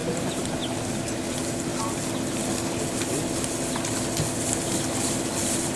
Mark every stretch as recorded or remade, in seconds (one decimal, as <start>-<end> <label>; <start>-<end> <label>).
0.0-5.8 recorded